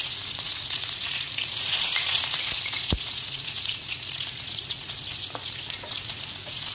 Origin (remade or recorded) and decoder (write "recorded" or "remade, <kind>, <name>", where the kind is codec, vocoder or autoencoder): remade, vocoder, Vocos